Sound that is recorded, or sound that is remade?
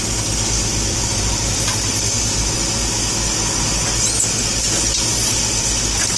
recorded